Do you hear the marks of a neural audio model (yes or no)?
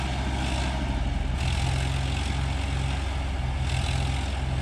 no